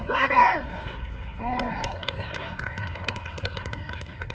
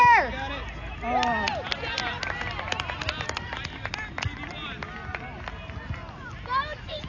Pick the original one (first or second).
second